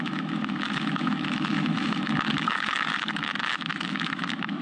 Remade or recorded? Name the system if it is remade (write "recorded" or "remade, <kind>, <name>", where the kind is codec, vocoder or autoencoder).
remade, autoencoder, DAC-VAE